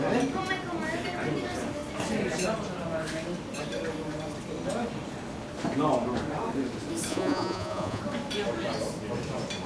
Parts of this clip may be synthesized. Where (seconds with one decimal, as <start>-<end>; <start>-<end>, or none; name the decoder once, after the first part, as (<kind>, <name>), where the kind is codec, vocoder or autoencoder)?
7.1-8.0 (vocoder, Vocos)